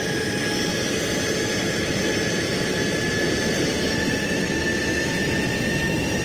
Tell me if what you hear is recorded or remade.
recorded